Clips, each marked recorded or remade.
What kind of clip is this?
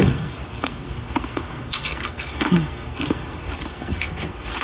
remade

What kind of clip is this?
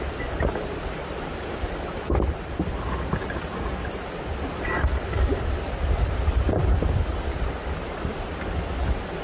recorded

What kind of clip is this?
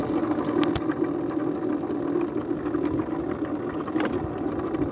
recorded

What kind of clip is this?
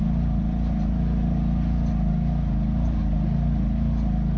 recorded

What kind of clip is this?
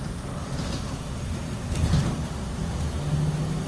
recorded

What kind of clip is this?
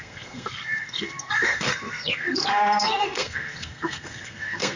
remade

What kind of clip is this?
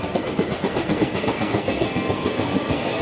remade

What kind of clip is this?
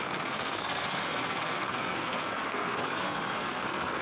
remade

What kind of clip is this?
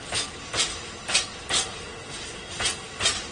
recorded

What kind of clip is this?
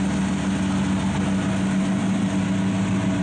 recorded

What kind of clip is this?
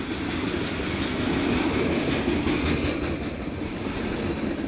recorded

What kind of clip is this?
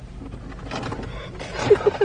recorded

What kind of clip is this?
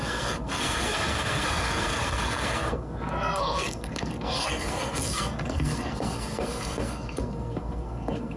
remade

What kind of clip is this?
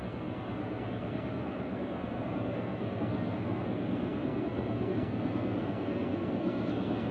remade